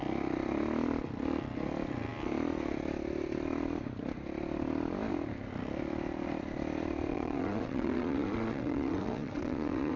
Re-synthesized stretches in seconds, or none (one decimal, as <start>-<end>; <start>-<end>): 7.1-10.0

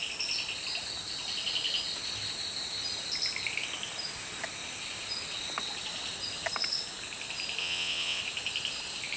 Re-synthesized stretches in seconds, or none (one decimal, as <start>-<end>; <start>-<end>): 7.6-8.2

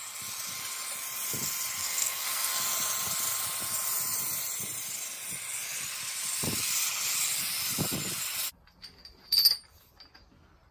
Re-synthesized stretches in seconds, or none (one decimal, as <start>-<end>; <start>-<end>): 1.8-2.6

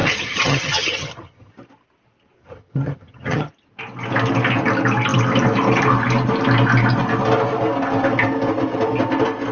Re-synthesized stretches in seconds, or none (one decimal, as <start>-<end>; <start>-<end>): 0.0-1.5; 2.4-3.5